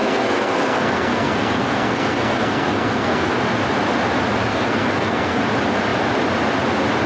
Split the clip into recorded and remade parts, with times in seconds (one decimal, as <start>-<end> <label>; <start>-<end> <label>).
0.0-3.3 remade; 3.3-4.5 recorded; 4.5-5.4 remade; 5.4-7.1 recorded